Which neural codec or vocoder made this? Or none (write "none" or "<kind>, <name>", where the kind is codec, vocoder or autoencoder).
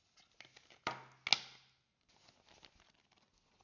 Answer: none